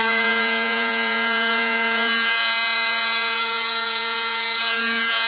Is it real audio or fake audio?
fake